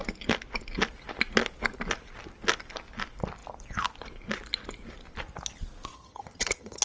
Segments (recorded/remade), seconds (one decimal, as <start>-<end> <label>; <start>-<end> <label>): 0.0-5.9 recorded; 5.9-6.8 remade

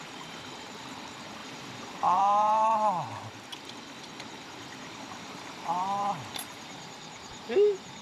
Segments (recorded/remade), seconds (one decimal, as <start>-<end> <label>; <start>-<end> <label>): 0.0-3.5 remade; 3.5-4.8 recorded; 4.8-8.0 remade

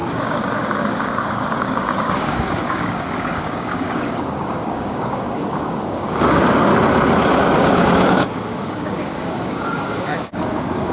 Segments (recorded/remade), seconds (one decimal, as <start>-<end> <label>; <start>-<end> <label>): 0.0-6.7 remade; 6.7-7.4 recorded; 7.4-10.9 remade

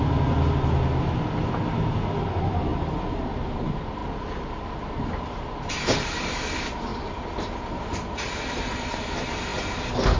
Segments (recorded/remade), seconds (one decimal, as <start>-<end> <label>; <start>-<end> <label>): 0.0-10.2 recorded

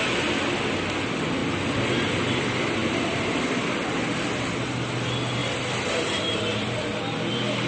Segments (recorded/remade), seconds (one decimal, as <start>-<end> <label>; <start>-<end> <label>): 0.0-2.8 recorded; 2.8-3.4 remade; 3.4-5.4 recorded; 5.4-6.4 remade; 6.4-7.7 recorded

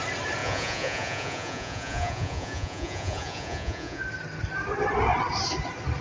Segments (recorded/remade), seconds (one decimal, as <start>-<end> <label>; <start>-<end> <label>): 0.0-0.4 recorded; 0.4-4.0 remade; 4.0-6.0 recorded

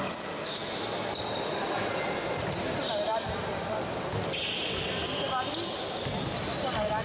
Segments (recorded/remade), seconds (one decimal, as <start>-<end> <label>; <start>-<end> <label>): 0.0-7.0 recorded